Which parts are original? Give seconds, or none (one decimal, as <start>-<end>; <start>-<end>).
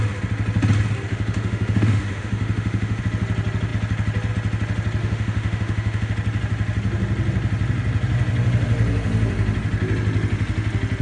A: 0.0-1.1; 3.0-5.0; 6.1-11.0